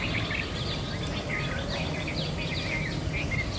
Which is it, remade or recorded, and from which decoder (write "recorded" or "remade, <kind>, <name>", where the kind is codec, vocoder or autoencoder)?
recorded